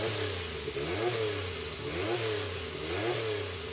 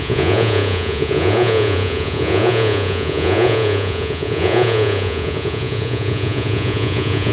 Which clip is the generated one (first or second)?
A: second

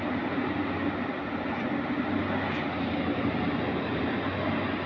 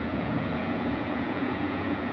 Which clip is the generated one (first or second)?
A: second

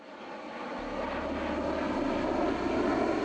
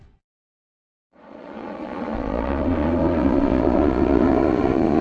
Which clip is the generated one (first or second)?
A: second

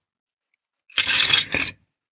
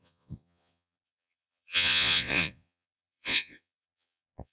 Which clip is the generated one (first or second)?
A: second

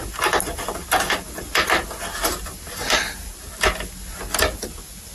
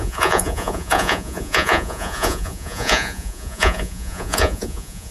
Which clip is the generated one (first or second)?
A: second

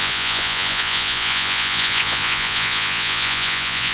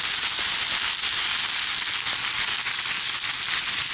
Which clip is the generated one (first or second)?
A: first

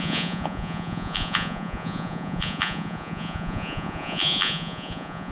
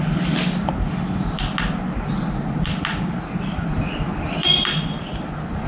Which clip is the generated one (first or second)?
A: first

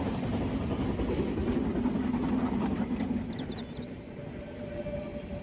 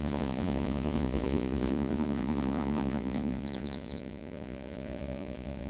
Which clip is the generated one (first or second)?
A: second